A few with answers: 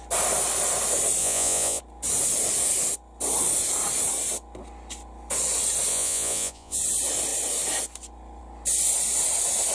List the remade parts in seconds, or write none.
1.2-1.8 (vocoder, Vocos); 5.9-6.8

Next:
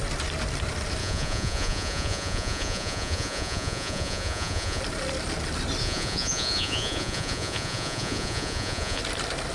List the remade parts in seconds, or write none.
1.0-4.8 (vocoder, Vocos); 5.8-9.0